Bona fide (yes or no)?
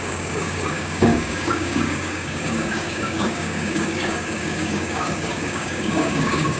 no